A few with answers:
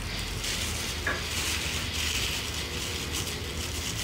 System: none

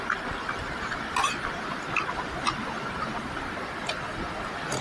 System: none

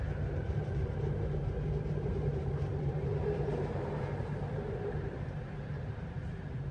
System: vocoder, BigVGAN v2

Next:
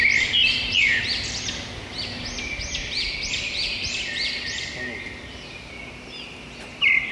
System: vocoder, BigVGAN v2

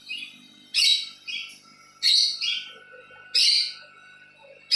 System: none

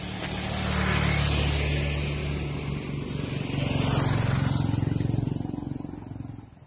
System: none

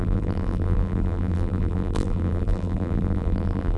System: vocoder, BigVGAN v2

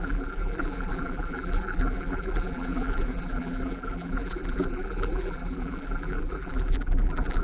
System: vocoder, BigVGAN v2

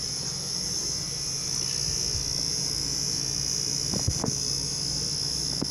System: none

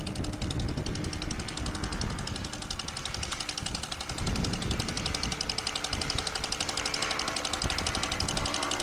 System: none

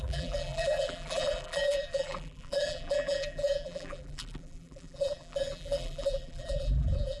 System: vocoder, BigVGAN v2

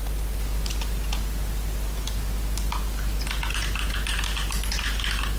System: none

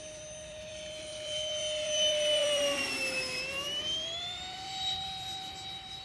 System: vocoder, BigVGAN v2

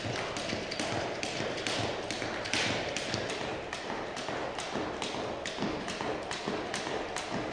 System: none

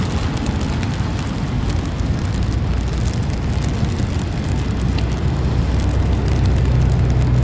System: none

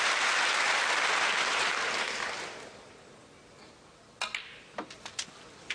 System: none